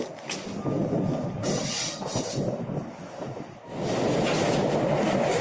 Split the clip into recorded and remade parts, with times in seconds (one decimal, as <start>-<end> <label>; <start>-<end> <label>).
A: 0.0-5.4 recorded